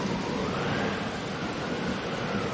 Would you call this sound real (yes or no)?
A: yes